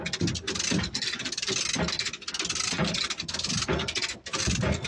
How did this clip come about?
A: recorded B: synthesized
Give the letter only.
A